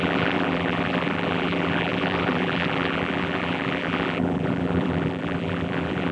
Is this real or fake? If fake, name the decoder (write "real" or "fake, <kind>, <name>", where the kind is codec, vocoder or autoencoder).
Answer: fake, vocoder, BigVGAN v2